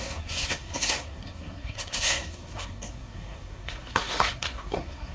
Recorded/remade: remade